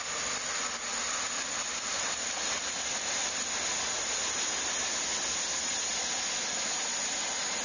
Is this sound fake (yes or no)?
no